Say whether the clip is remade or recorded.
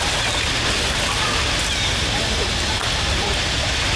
recorded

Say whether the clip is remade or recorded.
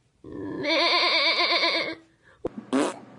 recorded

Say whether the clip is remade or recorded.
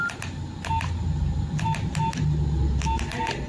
recorded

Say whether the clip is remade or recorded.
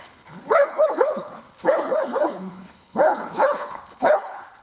remade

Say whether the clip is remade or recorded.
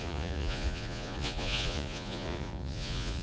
remade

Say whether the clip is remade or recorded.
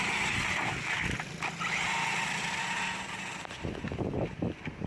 recorded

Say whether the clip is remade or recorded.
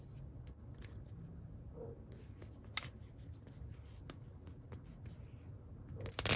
recorded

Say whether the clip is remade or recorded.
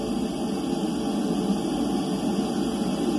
recorded